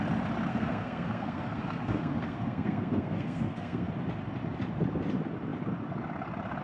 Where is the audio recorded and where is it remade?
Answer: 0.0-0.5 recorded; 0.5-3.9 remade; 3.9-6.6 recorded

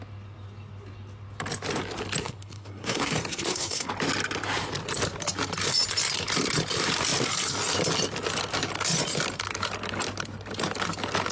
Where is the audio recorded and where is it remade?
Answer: 0.0-2.2 recorded; 2.2-3.9 remade; 3.9-11.3 recorded

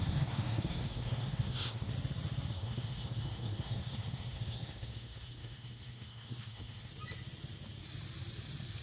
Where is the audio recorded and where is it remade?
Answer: 0.0-1.9 remade; 1.9-2.5 recorded; 2.5-6.9 remade; 6.9-8.8 recorded

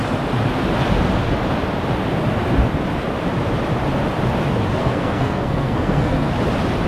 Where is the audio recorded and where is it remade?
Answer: 0.0-4.8 recorded; 4.8-6.3 remade; 6.3-6.9 recorded

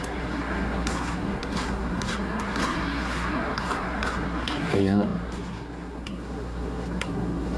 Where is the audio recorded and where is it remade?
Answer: 0.0-7.6 remade

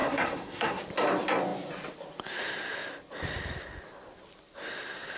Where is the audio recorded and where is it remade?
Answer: 0.0-0.8 remade; 0.8-5.2 recorded